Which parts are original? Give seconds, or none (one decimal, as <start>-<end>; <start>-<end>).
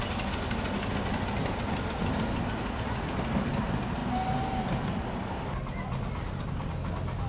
0.0-7.3